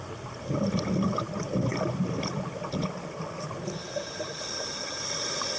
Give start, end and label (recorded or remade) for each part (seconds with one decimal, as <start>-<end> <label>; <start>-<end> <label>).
0.0-5.6 recorded